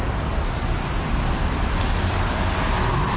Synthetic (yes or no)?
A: no